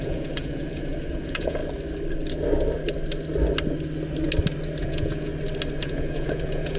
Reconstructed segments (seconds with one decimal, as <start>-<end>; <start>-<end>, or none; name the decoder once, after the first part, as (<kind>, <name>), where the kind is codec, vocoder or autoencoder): 0.0-1.6 (vocoder, Vocos); 4.8-5.3; 5.8-6.8